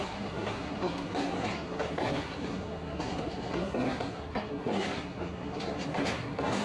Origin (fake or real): fake